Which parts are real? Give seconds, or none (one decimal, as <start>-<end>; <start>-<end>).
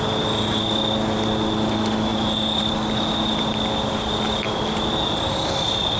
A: 0.0-6.0